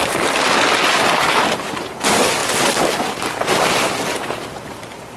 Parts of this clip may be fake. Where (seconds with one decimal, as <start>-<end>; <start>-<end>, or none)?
none

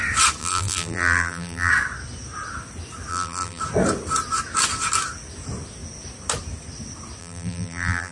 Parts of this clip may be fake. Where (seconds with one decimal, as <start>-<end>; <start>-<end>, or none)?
0.4-1.7; 3.1-3.6; 7.2-8.1

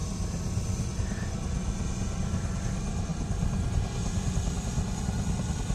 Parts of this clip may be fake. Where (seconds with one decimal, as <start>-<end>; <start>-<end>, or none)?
none